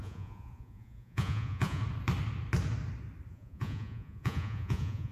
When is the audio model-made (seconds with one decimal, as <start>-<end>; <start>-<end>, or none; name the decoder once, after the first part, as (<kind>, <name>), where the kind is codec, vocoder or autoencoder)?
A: 0.0-1.8 (vocoder, Vocos); 3.3-5.1